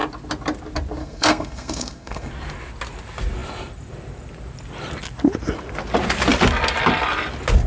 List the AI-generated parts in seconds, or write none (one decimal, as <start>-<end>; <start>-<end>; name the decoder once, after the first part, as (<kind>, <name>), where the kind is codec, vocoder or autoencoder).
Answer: 1.0-2.3 (codec, SNAC)